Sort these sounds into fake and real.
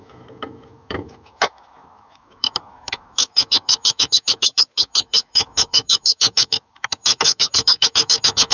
fake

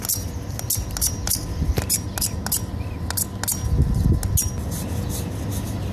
real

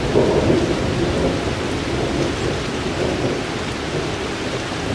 real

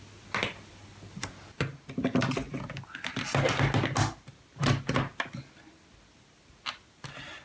real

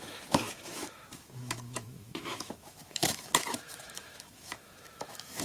fake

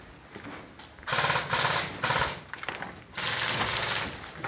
real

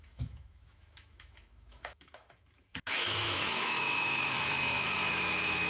fake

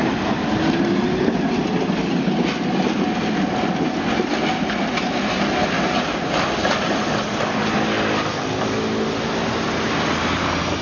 real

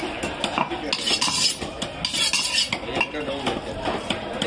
real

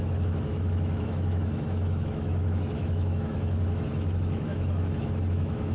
fake